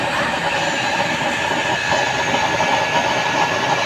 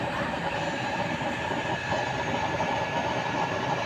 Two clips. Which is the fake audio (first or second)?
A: second